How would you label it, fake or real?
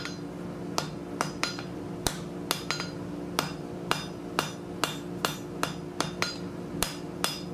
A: real